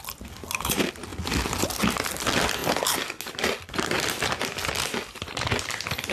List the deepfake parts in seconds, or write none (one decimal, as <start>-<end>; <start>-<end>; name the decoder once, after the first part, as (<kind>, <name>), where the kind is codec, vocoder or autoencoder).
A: none